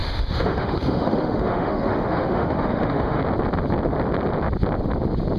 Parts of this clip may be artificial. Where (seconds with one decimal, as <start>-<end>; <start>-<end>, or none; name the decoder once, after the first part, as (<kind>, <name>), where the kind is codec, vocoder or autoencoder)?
0.0-3.2 (autoencoder, DAC-VAE)